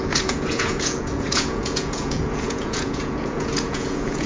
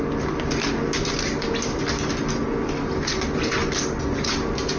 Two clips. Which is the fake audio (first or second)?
first